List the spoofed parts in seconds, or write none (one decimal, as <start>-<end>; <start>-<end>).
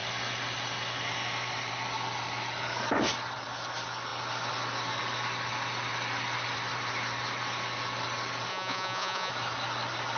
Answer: 8.5-9.3